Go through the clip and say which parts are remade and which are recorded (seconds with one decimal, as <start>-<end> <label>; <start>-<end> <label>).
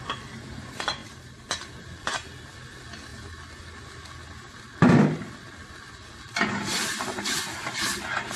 0.0-8.4 recorded